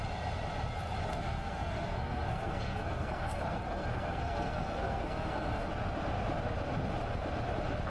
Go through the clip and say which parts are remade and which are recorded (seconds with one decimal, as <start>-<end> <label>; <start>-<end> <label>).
0.0-1.1 recorded; 1.1-5.7 remade; 5.7-7.9 recorded